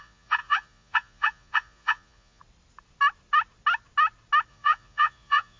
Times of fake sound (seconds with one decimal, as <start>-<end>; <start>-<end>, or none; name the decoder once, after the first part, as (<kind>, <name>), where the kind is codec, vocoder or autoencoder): 0.0-2.4 (vocoder, Vocos); 4.5-5.6